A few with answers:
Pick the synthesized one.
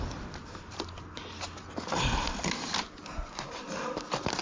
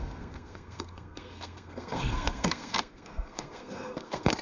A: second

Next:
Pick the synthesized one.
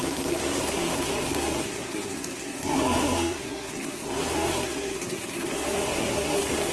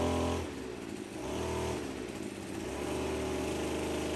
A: first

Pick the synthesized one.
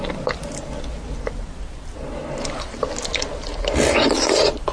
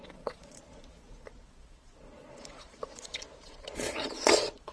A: second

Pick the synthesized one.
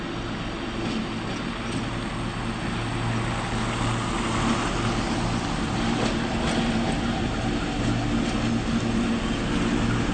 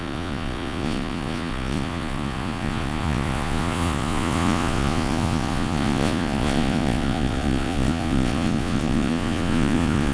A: second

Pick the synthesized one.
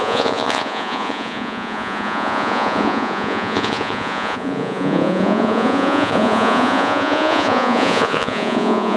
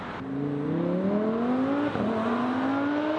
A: first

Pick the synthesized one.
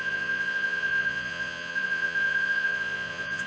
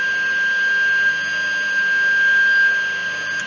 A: first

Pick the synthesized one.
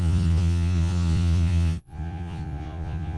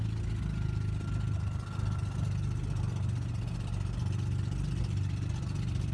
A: first